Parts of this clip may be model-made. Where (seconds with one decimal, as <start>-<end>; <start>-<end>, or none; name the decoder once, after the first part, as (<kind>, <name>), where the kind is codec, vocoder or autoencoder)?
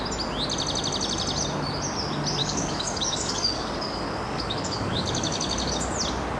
2.4-5.8 (codec, DAC)